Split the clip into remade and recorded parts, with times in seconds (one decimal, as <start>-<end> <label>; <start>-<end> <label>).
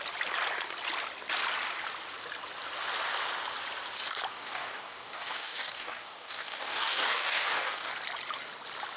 0.0-4.3 recorded; 4.3-7.9 remade; 7.9-9.0 recorded